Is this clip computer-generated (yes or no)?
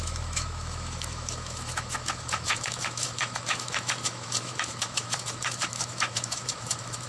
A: yes